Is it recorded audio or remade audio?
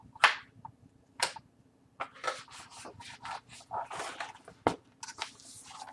recorded